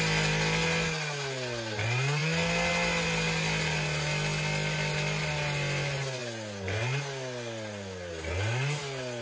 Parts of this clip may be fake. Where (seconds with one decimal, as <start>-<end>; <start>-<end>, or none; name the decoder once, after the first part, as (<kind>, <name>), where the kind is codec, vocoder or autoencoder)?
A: none